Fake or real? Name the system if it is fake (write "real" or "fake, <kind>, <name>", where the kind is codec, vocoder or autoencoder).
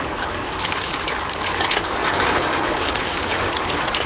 fake, codec, DAC